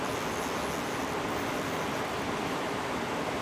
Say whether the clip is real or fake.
real